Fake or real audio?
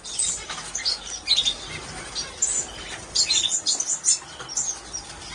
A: real